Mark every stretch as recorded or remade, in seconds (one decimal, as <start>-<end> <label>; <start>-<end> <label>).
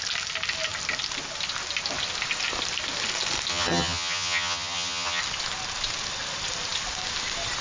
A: 0.0-3.5 recorded; 3.5-5.2 remade; 5.2-7.6 recorded